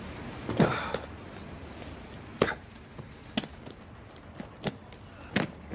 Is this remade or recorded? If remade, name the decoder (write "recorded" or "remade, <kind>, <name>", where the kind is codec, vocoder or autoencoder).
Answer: recorded